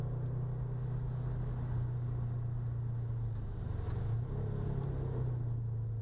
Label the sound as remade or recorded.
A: recorded